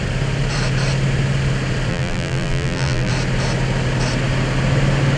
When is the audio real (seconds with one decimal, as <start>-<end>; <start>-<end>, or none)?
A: 0.0-1.9; 3.1-5.2